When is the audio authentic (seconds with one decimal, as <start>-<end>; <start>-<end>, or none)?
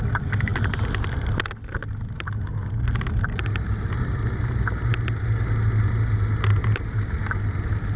0.0-6.6; 7.5-8.0